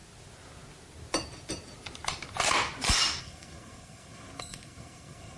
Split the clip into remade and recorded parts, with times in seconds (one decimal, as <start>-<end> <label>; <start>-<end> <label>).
0.0-3.2 recorded; 3.2-5.4 remade